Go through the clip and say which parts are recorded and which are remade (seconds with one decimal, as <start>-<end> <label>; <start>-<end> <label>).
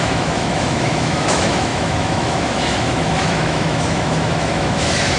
0.0-5.2 remade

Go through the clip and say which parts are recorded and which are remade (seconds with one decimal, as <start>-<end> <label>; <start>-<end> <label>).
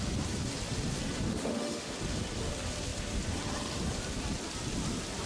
0.0-1.3 recorded; 1.3-1.9 remade; 1.9-5.3 recorded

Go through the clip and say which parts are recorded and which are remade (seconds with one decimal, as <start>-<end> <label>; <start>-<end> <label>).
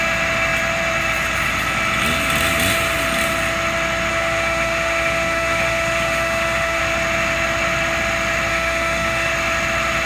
0.0-4.1 recorded; 4.1-6.8 remade; 6.8-8.5 recorded; 8.5-9.3 remade; 9.3-10.1 recorded